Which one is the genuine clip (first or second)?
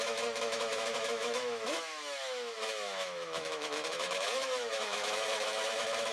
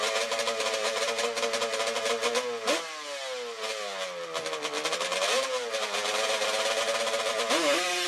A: second